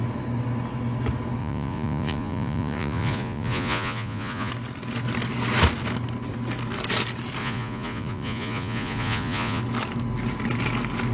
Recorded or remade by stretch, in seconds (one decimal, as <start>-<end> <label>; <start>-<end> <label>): 0.0-1.4 recorded; 1.4-4.5 remade; 4.5-7.4 recorded; 7.4-9.6 remade; 9.6-11.1 recorded